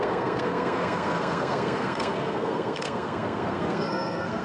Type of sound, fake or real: fake